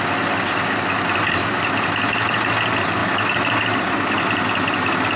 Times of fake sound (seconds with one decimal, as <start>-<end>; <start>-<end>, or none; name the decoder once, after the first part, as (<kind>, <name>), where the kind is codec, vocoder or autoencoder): none